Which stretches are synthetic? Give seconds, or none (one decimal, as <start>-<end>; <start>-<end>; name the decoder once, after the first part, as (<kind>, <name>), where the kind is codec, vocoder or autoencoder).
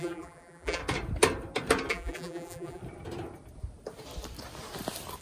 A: 0.0-0.8 (vocoder, BigVGAN v2); 1.9-2.8